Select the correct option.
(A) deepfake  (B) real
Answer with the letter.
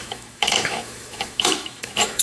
A